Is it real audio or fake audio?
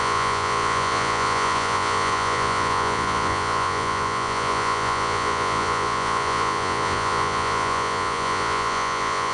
fake